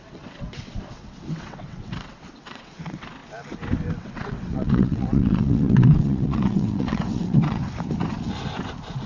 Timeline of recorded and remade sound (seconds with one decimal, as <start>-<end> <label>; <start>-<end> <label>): 0.0-3.2 remade; 3.2-4.0 recorded; 4.0-7.6 remade; 7.6-9.1 recorded